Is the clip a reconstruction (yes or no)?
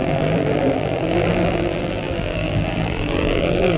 yes